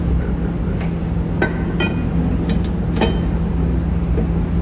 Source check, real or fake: real